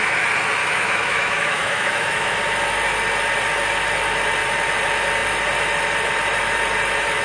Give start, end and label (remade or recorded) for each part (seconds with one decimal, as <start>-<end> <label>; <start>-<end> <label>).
0.0-0.6 recorded; 0.6-2.3 remade; 2.3-7.2 recorded